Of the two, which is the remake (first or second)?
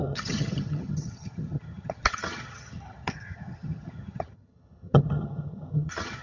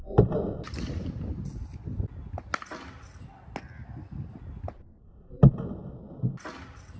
first